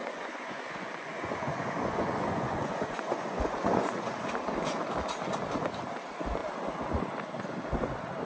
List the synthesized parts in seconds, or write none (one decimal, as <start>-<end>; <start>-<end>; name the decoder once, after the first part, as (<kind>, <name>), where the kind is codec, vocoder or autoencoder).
0.0-4.1 (vocoder, Vocos)